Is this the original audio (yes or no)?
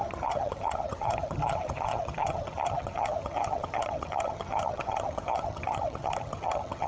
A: no